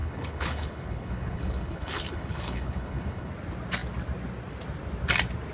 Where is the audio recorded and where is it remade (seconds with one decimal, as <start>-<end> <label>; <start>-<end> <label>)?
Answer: 0.0-3.3 remade; 3.3-5.5 recorded